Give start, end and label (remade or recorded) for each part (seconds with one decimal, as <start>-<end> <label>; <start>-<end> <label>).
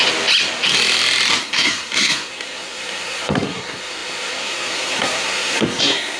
0.0-1.4 recorded; 1.4-6.2 remade